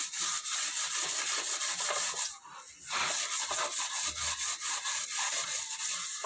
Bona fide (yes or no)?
yes